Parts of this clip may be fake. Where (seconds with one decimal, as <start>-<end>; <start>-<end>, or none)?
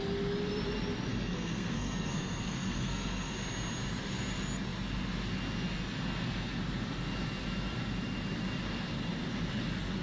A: 1.1-3.3